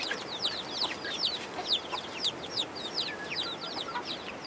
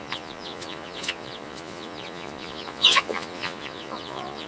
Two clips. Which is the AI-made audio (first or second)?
second